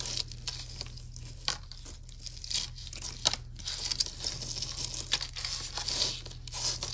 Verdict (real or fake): real